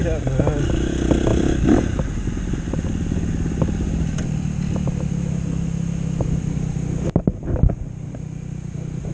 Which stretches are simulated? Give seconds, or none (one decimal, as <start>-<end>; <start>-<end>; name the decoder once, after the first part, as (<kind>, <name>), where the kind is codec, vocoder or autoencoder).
none